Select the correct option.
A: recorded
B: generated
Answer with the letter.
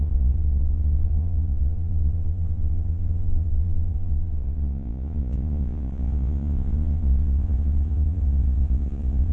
B